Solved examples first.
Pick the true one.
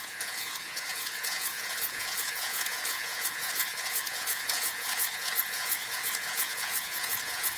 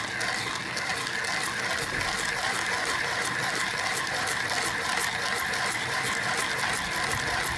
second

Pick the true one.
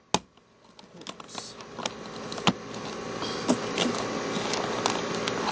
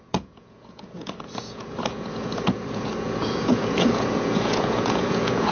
first